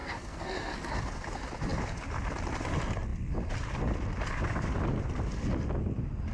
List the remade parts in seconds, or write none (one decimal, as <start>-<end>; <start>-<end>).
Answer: 0.0-0.9